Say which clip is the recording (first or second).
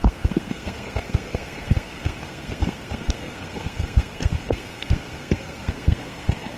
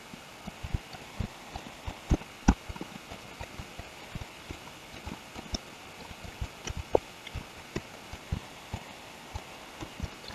second